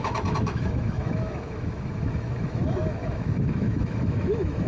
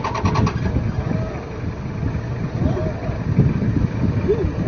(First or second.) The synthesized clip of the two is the first